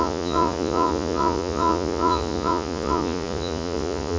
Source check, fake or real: fake